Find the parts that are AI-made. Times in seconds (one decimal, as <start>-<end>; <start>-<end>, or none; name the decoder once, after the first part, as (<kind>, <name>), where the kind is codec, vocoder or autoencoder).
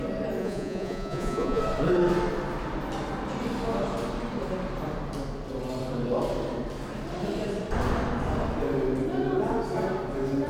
0.4-1.6 (vocoder, Vocos)